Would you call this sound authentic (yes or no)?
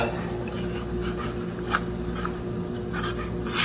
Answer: yes